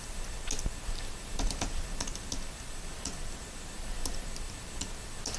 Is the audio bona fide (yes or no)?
yes